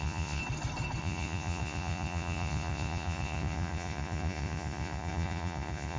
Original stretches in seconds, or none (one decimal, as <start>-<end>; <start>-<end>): 0.4-1.0